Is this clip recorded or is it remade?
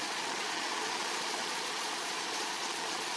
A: remade